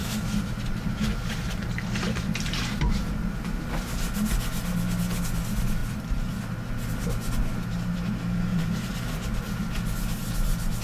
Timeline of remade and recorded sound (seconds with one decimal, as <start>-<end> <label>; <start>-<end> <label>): 0.0-3.5 remade; 3.5-5.8 recorded; 5.8-6.4 remade; 6.4-8.5 recorded; 8.5-9.4 remade; 9.4-10.8 recorded